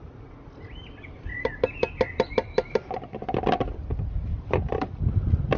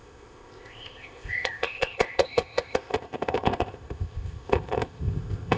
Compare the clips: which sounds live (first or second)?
first